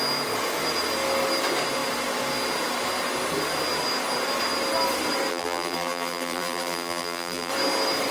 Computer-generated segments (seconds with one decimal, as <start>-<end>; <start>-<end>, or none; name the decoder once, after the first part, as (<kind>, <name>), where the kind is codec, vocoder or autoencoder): 5.3-7.5 (vocoder, BigVGAN v2)